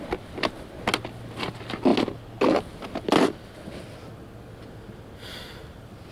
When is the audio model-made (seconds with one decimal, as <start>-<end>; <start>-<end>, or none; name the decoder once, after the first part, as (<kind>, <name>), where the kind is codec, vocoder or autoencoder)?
none